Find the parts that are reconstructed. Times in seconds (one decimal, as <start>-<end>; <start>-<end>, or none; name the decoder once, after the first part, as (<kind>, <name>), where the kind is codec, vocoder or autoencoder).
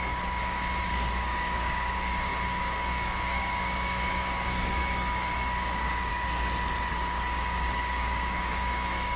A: 0.0-6.1 (codec, DAC); 6.9-9.2